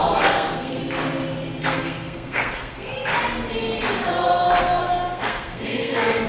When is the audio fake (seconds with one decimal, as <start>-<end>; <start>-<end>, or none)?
0.0-0.8; 1.6-3.1; 4.6-6.3